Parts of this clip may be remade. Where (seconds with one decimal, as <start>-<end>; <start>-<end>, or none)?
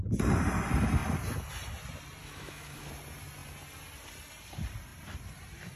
2.2-2.9